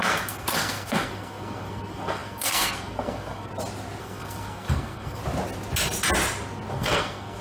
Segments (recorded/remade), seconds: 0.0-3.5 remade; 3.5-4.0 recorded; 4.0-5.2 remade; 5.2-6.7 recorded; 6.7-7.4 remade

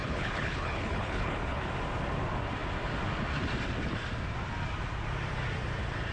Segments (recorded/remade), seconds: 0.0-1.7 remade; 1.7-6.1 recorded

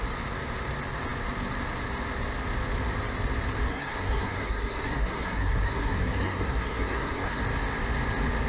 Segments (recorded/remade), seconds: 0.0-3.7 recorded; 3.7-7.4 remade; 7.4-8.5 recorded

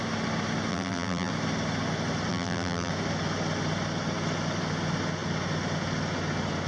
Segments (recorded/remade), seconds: 0.0-0.7 recorded; 0.7-1.3 remade; 1.3-2.3 recorded; 2.3-2.9 remade; 2.9-6.7 recorded

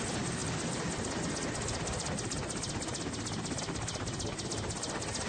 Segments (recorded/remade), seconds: 0.0-5.3 recorded